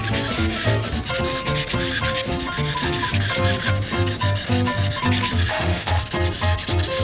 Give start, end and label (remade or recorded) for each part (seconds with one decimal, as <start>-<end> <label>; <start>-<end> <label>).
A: 0.0-5.5 recorded; 5.5-6.0 remade; 6.0-7.0 recorded